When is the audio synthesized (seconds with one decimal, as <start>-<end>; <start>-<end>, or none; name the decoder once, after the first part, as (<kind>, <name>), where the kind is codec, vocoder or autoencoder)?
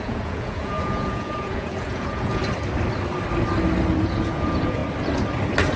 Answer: 0.0-2.4 (vocoder, Vocos); 4.0-4.8